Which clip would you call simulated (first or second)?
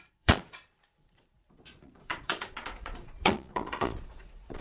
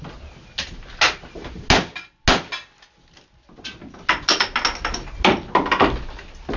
first